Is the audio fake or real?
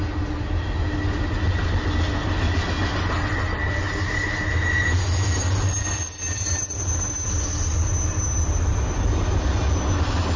real